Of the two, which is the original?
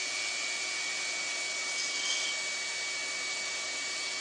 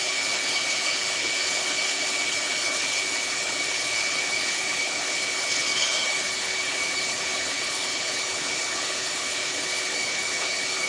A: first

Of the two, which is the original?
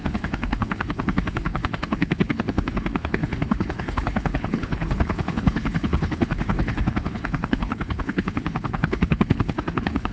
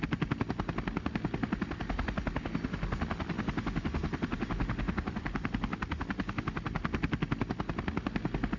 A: second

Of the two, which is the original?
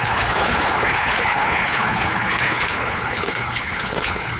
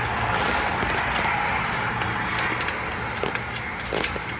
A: second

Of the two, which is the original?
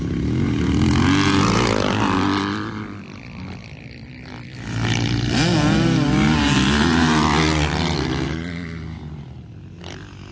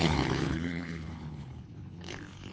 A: first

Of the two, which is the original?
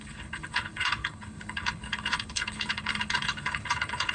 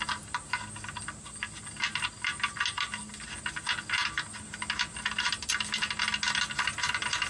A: second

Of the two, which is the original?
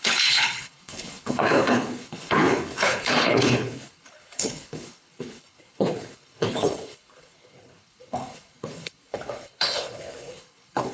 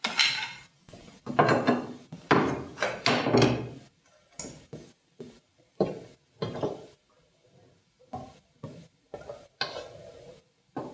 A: second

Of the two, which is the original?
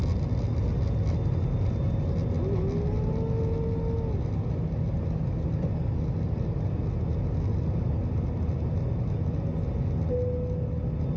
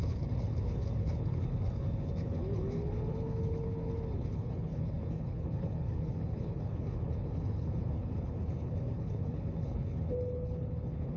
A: first